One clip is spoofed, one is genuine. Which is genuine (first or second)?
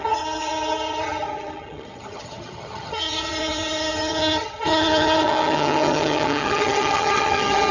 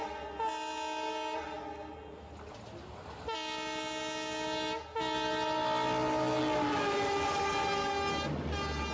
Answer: second